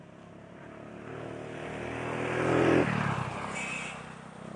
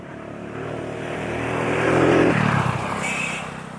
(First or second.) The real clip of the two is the first